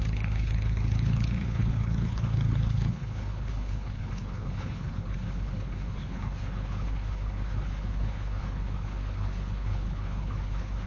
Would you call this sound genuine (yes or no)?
no